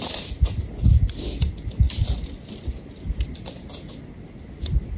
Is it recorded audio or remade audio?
recorded